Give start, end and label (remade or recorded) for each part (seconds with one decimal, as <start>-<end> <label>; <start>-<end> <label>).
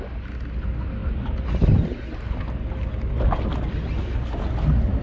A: 0.0-5.0 recorded